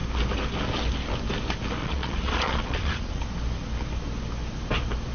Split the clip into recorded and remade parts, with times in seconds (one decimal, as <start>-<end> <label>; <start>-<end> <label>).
0.0-1.8 recorded; 1.8-3.2 remade; 3.2-5.1 recorded